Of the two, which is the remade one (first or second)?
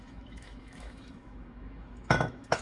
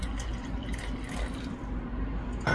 first